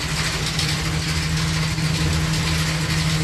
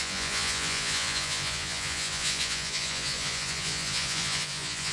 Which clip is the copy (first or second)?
second